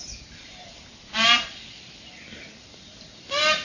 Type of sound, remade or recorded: remade